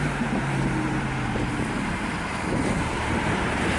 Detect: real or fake fake